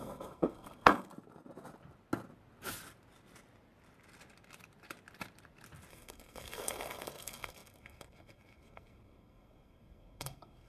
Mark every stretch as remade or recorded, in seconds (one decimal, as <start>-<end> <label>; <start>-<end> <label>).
0.0-1.1 remade; 1.1-5.9 recorded; 5.9-10.7 remade